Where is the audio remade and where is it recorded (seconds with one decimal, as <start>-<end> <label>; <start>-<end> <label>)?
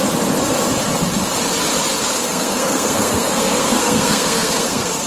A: 0.0-2.0 recorded; 2.0-5.1 remade